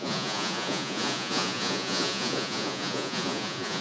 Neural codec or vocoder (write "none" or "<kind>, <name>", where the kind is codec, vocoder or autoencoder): vocoder, Vocos